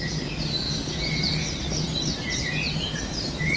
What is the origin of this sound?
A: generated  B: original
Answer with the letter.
B